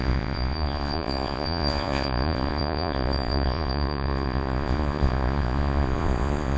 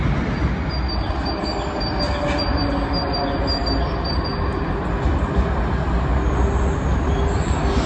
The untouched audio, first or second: second